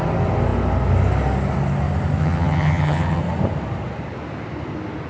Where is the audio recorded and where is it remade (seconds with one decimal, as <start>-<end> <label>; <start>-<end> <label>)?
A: 0.0-2.2 recorded; 2.2-3.2 remade; 3.2-5.1 recorded